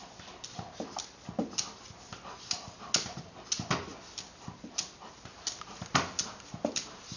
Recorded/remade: recorded